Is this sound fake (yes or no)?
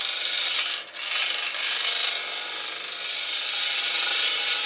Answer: no